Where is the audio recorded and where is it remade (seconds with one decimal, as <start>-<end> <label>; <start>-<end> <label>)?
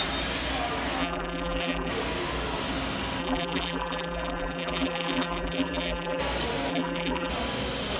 0.0-1.0 recorded; 1.0-1.9 remade; 1.9-3.2 recorded; 3.2-6.2 remade; 6.2-6.7 recorded; 6.7-7.3 remade; 7.3-8.0 recorded